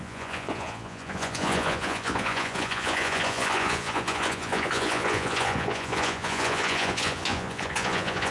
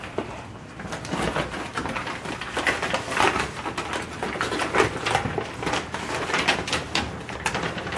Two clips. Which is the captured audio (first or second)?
second